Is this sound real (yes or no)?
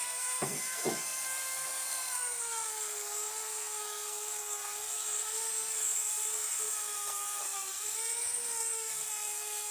no